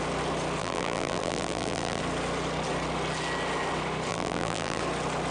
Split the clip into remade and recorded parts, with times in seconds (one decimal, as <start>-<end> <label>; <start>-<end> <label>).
0.0-0.6 recorded; 0.6-2.0 remade; 2.0-4.1 recorded; 4.1-4.8 remade; 4.8-5.3 recorded